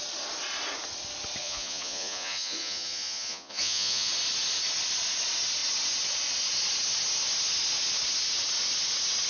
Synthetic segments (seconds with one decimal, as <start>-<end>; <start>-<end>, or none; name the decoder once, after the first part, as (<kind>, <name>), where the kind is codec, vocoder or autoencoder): 1.4-4.1 (vocoder, Vocos)